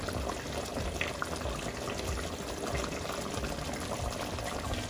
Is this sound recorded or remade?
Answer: recorded